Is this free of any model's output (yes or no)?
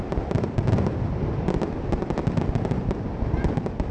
no